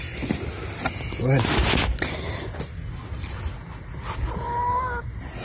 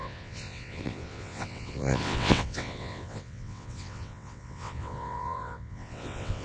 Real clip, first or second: first